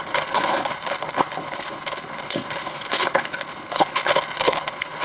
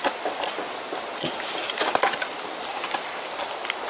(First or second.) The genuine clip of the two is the second